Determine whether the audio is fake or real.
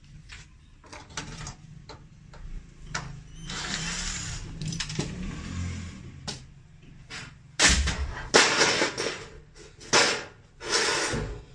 real